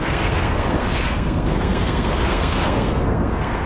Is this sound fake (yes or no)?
yes